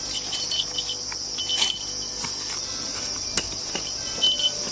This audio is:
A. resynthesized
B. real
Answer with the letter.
B